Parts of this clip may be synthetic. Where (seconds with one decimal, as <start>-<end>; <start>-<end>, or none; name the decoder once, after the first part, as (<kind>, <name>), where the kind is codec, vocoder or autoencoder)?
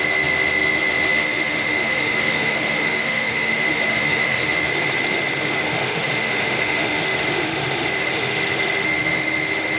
0.0-4.7 (autoencoder, DAC-VAE); 5.4-9.8